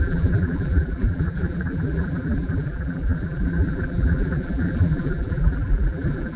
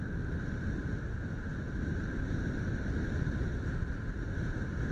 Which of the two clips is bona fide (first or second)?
second